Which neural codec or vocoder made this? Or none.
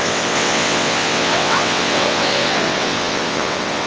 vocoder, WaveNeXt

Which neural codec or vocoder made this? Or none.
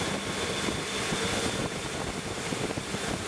none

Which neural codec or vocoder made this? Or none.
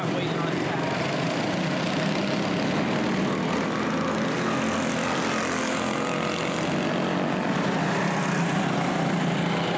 none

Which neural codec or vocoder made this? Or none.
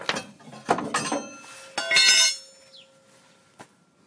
none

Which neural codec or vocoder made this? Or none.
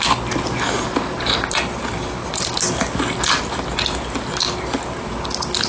none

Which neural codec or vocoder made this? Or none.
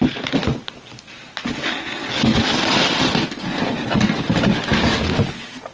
none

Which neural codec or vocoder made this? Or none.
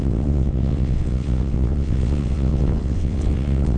vocoder, WaveNeXt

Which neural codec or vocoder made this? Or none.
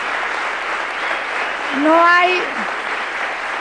none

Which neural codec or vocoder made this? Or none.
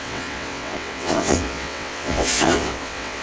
vocoder, WaveNeXt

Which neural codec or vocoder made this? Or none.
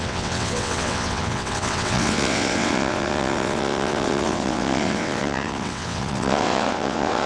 vocoder, WaveNeXt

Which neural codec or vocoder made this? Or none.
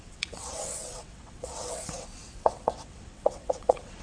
vocoder, WaveNeXt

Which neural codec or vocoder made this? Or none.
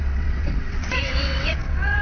vocoder, WaveNeXt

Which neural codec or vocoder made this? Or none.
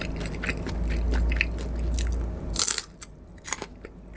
none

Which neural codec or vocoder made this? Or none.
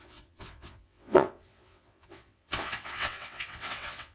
vocoder, WaveNeXt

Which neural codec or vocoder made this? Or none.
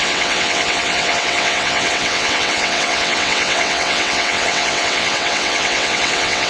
vocoder, WaveNeXt